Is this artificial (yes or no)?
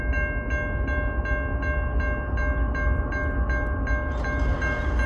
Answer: no